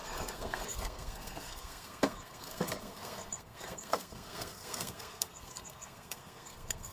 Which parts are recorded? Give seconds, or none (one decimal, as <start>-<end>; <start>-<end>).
none

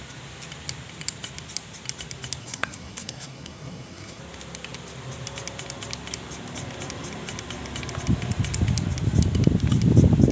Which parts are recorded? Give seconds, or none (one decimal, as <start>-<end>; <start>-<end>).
0.0-2.4; 4.2-10.3

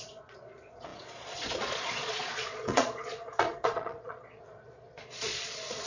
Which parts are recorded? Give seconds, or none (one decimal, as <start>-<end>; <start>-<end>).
none

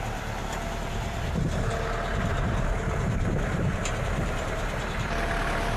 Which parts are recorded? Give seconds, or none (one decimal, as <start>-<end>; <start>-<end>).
0.0-0.4; 1.5-2.3

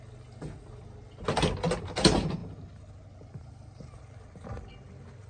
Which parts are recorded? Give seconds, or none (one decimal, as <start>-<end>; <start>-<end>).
0.0-5.3

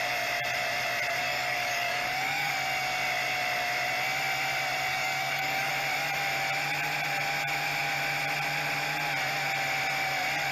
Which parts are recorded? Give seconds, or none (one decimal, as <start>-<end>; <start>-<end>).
0.0-1.2; 2.5-4.9; 5.7-10.5

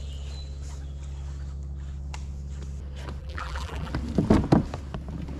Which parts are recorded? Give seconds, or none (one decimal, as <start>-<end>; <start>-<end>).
0.0-3.2; 3.9-5.4

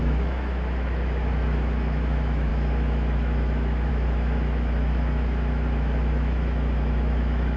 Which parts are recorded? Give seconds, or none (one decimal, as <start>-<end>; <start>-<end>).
none